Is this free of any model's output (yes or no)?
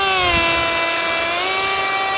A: yes